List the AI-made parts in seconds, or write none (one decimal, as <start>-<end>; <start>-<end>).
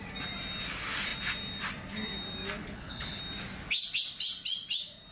2.6-3.2